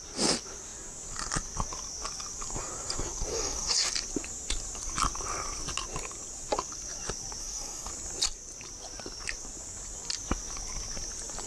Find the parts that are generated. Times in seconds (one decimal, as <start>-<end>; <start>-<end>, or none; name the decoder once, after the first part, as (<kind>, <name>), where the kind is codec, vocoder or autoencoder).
3.3-3.9 (codec, DAC); 7.4-7.9